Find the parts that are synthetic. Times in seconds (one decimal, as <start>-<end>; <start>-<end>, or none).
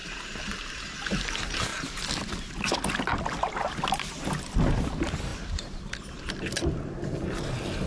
0.0-0.9; 5.3-6.2